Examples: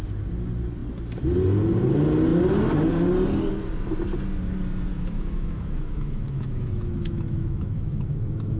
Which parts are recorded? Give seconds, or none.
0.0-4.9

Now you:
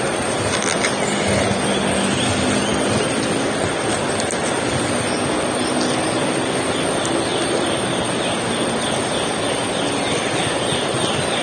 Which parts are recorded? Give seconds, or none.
0.0-7.3; 8.2-11.4

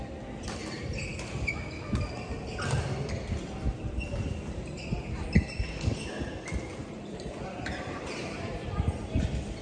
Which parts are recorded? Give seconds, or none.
0.0-6.8

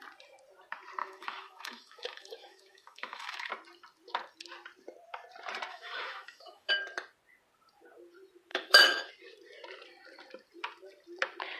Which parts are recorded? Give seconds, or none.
0.0-1.0; 3.5-5.7; 6.7-8.5; 9.1-11.6

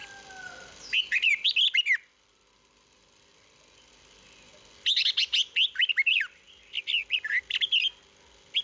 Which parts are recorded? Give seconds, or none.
0.0-8.6

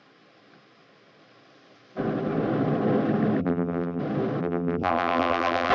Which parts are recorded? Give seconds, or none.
0.0-3.4; 4.0-4.4

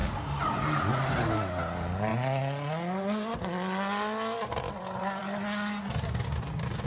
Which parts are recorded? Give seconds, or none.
0.0-6.9